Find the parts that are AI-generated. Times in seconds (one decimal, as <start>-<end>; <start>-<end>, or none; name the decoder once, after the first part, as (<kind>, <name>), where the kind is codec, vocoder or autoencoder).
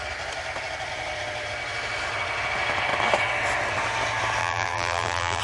4.4-5.4 (vocoder, BigVGAN v2)